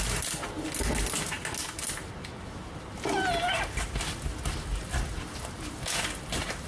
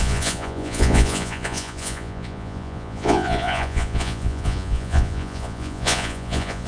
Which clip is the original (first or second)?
first